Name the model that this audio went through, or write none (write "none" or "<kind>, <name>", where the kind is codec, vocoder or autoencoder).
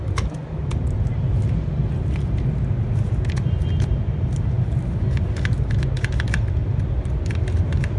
none